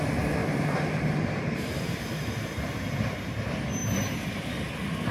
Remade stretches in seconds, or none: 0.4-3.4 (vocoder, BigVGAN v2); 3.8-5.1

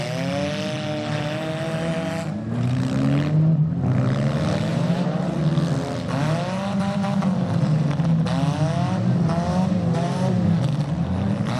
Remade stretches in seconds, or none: 4.7-5.4 (vocoder, BigVGAN v2)